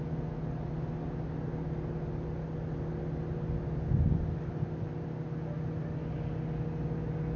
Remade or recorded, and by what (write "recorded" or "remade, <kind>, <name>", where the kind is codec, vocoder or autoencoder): recorded